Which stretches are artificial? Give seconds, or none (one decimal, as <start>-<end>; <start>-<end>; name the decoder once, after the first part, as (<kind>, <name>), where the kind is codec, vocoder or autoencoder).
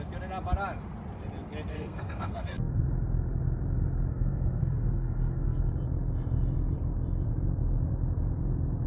1.7-2.8 (codec, SNAC); 4.1-5.6